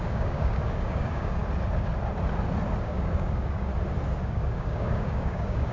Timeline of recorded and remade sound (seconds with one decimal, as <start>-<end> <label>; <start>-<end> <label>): 0.0-1.4 remade; 1.4-2.8 recorded; 2.8-3.7 remade; 3.7-4.2 recorded; 4.2-5.7 remade